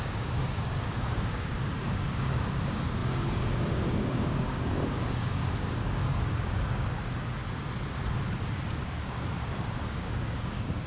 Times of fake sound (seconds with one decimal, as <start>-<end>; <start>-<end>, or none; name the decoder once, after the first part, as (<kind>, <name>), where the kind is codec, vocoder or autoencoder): 0.0-7.4 (codec, DAC); 9.9-10.9